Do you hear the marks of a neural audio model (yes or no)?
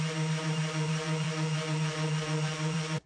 yes